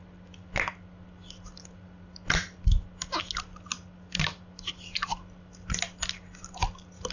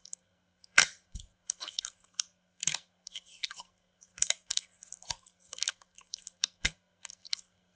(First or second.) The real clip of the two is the first